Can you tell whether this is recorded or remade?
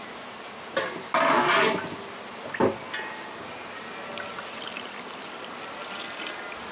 recorded